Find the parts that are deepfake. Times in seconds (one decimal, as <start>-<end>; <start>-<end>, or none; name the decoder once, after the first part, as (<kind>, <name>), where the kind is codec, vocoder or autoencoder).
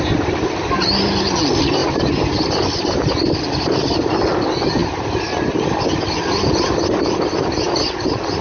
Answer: none